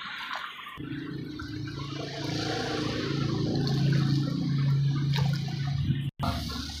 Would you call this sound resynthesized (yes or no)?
no